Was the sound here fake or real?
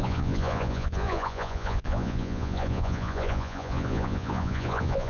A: fake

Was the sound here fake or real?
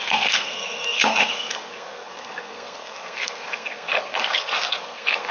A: fake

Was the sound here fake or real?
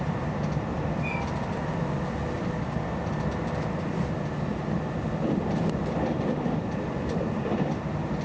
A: real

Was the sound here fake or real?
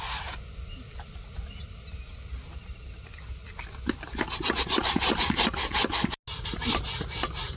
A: real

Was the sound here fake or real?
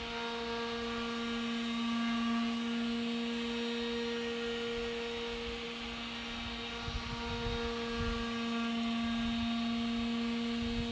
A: real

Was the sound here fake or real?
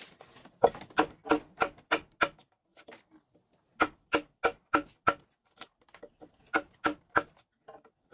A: real